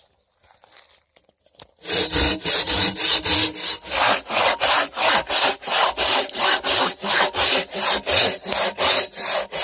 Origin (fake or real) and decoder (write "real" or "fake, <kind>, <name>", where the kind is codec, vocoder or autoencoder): real